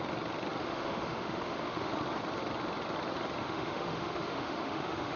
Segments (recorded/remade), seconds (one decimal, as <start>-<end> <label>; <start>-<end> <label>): 0.0-0.6 recorded; 0.6-1.9 remade; 1.9-3.4 recorded; 3.4-5.2 remade